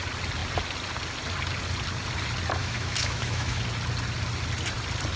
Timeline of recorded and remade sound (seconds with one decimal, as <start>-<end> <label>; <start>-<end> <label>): 0.0-2.6 recorded; 2.6-3.6 remade; 3.6-5.2 recorded